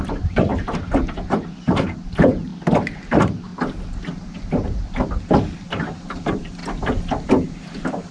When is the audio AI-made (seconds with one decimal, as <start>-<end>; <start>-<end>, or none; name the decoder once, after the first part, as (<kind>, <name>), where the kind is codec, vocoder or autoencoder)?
0.0-0.5 (vocoder, BigVGAN v2); 1.6-2.5; 3.1-3.5; 5.7-6.6; 7.3-8.1